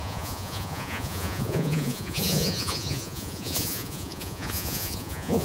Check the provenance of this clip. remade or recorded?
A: remade